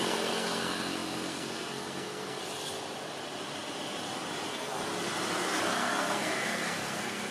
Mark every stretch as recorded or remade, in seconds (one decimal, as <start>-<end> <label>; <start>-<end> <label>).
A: 0.0-2.4 remade; 2.4-4.5 recorded; 4.5-4.9 remade; 4.9-5.6 recorded; 5.6-7.3 remade